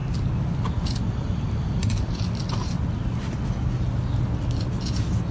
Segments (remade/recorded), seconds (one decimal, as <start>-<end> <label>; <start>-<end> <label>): 0.0-5.3 recorded